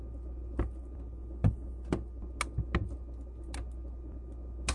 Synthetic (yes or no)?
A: no